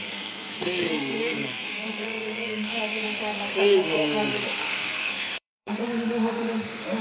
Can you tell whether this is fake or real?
fake